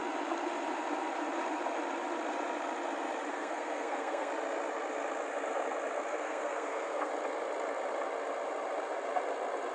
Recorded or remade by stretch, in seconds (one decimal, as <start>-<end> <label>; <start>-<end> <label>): 0.0-3.3 recorded; 3.3-4.3 remade; 4.3-6.1 recorded; 6.1-7.1 remade; 7.1-9.7 recorded